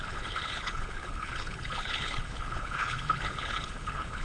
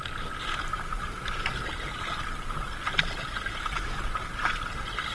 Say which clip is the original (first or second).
second